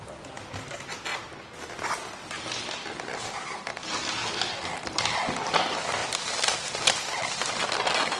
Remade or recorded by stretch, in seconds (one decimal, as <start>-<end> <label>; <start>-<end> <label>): 0.0-1.1 recorded; 1.1-3.9 remade; 3.9-6.0 recorded; 6.0-7.2 remade; 7.2-8.2 recorded